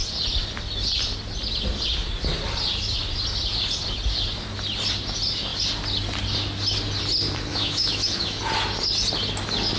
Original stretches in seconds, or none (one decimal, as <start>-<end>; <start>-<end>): 0.0-7.5; 8.4-9.8

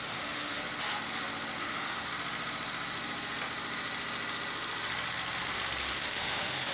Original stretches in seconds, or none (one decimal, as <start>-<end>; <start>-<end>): 0.6-1.6; 2.1-5.8

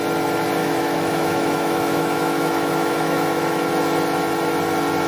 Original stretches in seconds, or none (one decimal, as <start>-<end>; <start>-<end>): 0.0-0.6; 3.7-5.1

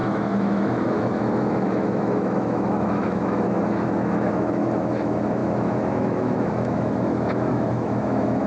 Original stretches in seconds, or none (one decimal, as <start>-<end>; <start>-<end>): none

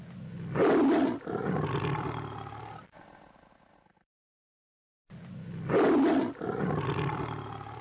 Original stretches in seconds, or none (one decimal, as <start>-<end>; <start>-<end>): 0.0-7.8

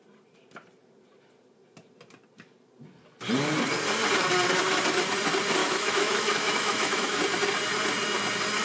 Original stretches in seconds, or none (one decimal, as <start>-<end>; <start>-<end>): 0.0-5.6; 7.2-8.6

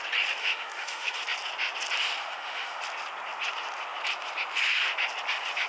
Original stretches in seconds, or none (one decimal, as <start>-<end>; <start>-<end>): 0.0-0.4; 1.2-2.2; 2.8-5.7